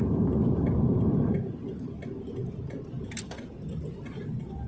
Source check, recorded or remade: recorded